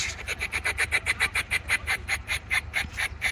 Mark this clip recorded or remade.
remade